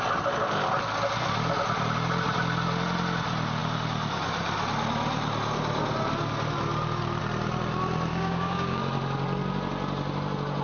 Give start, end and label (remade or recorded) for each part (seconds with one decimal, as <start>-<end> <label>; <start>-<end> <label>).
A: 0.0-8.1 recorded; 8.1-8.8 remade; 8.8-10.6 recorded

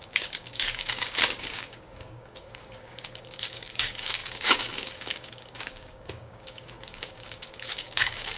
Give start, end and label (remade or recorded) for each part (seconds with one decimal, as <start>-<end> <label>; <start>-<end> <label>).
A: 0.0-8.4 remade